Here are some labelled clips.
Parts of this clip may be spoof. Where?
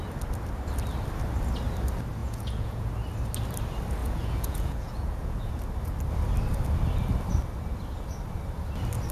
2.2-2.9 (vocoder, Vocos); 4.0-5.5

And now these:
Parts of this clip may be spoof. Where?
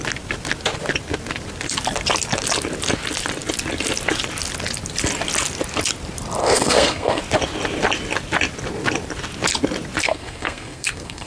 6.4-7.2 (codec, SNAC); 10.0-11.3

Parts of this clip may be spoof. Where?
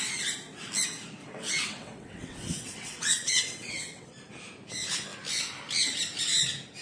1.2-4.1 (vocoder, WaveNeXt)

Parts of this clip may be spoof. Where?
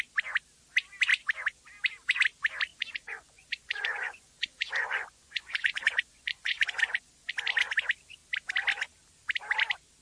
2.7-7.3 (vocoder, Vocos)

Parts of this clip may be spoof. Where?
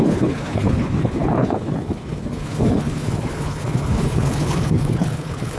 0.0-5.6 (codec, HILCodec)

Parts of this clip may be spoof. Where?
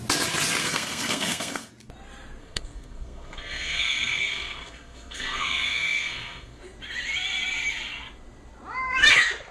0.6-1.7 (codec, SNAC); 2.4-6.6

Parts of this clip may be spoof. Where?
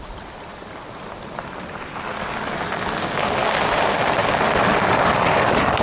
none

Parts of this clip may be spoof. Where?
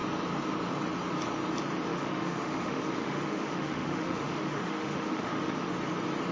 1.9-5.7 (autoencoder, DAC-VAE)